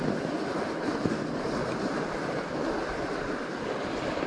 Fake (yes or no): no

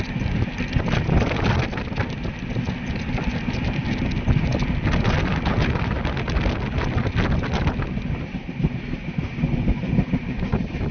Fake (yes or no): no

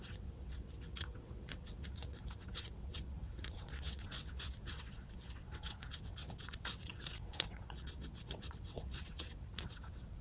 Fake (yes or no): yes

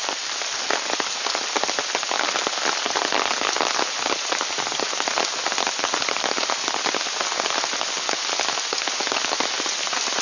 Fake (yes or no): no